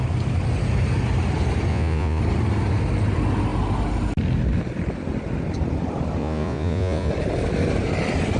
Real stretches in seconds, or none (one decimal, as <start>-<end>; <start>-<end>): 0.0-1.7; 2.2-6.2; 7.1-8.4